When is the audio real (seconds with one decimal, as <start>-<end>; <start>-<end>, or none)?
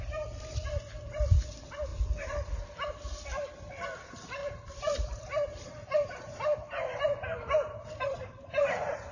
0.0-4.4; 8.7-9.1